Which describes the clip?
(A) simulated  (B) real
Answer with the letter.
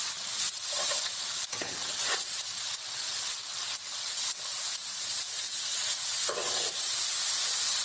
A